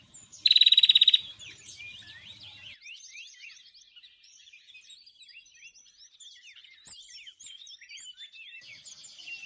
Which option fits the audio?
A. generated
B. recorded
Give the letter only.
B